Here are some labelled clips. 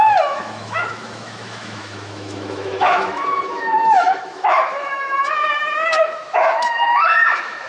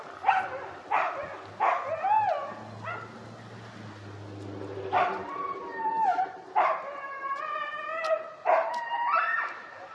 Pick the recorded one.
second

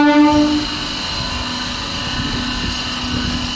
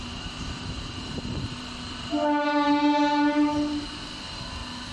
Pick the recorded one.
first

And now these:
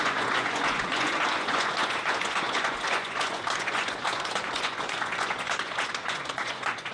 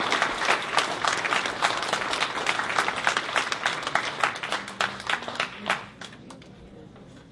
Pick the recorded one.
second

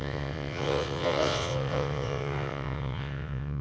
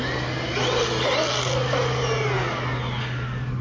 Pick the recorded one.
second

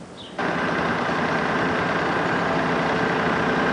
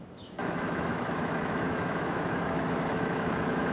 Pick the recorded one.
first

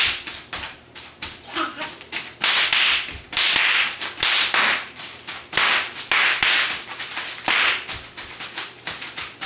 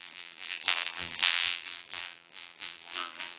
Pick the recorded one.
first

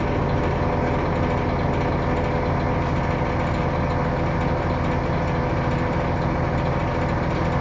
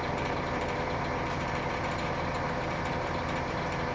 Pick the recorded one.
first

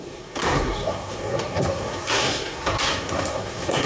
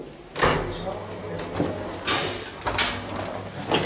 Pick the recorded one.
second